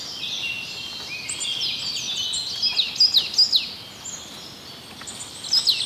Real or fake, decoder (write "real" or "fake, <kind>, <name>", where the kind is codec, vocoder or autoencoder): real